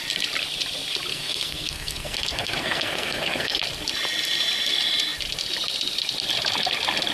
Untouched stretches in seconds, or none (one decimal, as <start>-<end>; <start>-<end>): 0.0-1.1; 3.6-7.1